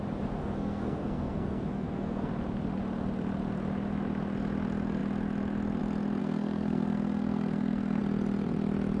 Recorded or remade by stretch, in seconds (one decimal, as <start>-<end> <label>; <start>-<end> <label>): 0.0-0.4 recorded; 0.4-2.3 remade; 2.3-6.2 recorded; 6.2-8.0 remade; 8.0-9.0 recorded